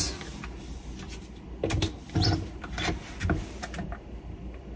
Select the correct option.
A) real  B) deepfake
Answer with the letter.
A